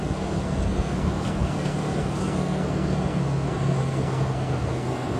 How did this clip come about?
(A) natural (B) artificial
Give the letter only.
B